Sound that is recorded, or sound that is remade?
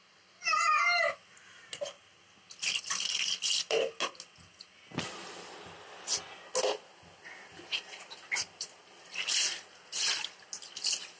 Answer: recorded